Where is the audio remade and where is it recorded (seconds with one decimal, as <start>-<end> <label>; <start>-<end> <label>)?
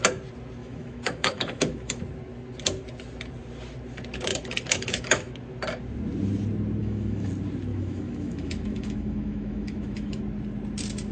0.0-0.6 recorded; 0.6-2.0 remade; 2.0-4.3 recorded; 4.3-5.3 remade; 5.3-6.8 recorded; 6.8-7.3 remade; 7.3-7.7 recorded; 7.7-10.2 remade; 10.2-11.1 recorded